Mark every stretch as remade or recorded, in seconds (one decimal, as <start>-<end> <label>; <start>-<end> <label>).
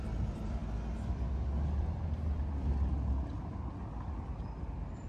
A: 0.0-5.1 recorded